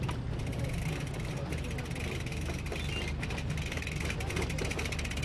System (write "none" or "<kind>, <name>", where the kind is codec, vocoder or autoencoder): none